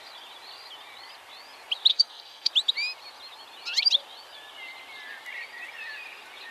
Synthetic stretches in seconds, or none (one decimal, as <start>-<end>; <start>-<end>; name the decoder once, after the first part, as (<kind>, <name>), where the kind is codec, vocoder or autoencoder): 1.9-2.5 (codec, SNAC)